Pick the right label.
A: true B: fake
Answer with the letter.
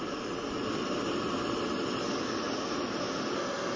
A